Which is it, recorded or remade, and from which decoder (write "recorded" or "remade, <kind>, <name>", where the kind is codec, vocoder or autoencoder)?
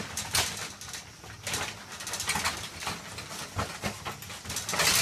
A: recorded